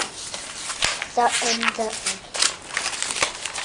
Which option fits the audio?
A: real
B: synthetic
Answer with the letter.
A